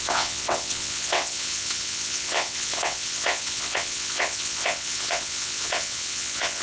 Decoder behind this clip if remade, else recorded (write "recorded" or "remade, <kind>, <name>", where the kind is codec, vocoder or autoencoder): remade, vocoder, WaveNeXt